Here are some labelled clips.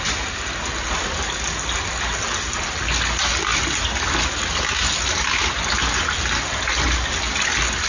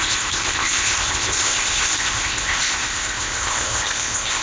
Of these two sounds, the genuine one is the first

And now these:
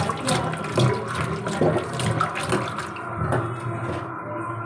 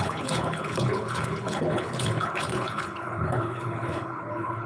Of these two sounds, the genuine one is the first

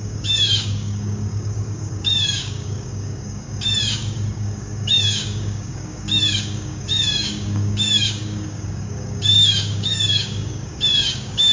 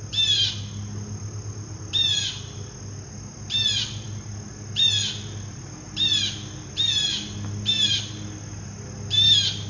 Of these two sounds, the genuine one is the second